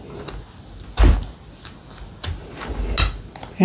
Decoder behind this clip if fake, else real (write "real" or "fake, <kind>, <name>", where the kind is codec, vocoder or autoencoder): real